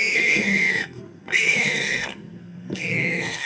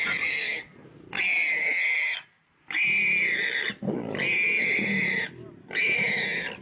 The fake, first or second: first